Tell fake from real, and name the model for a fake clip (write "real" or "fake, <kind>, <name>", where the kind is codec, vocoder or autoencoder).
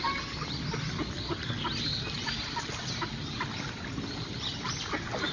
real